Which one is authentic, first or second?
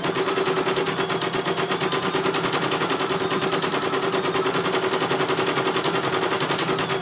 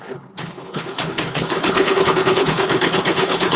first